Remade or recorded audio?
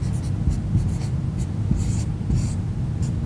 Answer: remade